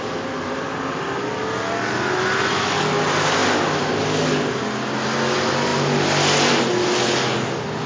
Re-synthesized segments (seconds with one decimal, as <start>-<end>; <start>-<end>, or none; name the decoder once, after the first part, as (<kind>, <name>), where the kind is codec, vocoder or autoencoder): none

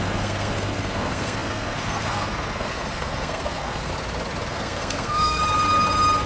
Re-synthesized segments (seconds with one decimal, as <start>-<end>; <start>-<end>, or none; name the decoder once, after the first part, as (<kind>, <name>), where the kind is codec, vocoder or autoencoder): 0.0-3.9 (codec, SNAC); 4.5-5.4

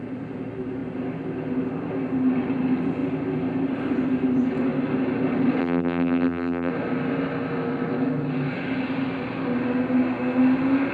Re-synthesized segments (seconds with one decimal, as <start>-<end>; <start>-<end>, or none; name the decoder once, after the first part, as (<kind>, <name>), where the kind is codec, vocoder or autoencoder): 5.6-6.7 (vocoder, BigVGAN v2)

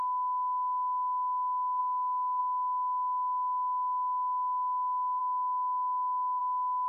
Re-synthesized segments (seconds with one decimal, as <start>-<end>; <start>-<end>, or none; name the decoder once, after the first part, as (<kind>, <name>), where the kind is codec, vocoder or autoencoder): none

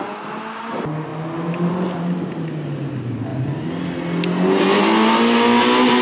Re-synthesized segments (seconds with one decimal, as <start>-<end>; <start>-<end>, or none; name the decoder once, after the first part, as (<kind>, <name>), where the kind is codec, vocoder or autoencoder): none

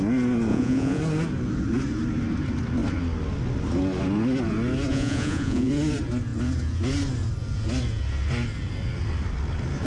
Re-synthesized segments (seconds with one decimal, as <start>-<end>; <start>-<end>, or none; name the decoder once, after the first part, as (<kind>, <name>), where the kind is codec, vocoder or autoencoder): 0.5-1.0 (vocoder, Vocos); 4.9-5.7